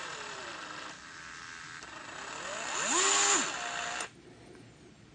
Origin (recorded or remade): recorded